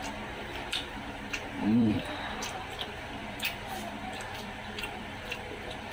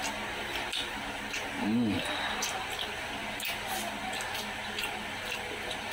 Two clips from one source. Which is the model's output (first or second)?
first